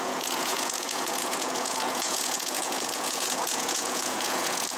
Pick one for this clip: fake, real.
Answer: fake